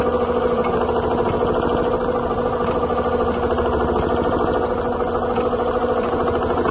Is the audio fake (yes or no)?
no